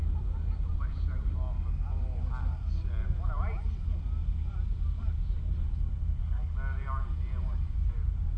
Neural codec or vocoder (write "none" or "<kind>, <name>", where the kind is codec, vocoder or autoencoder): none